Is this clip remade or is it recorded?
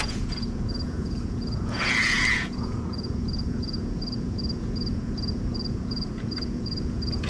remade